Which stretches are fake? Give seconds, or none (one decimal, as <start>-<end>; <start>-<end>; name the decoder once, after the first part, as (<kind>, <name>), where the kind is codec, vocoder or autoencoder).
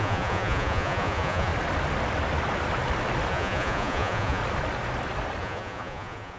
0.0-1.5 (vocoder, Vocos); 3.3-4.4; 5.4-6.4